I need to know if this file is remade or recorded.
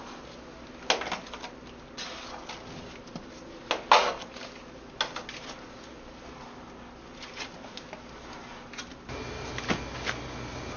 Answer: recorded